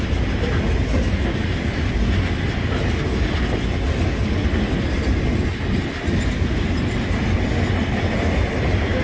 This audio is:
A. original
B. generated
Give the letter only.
A